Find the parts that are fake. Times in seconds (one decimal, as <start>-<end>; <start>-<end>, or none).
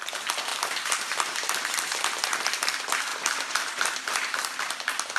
0.5-2.0; 3.1-4.6